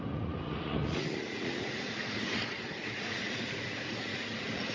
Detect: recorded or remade remade